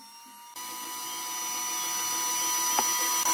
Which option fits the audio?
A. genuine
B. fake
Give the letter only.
A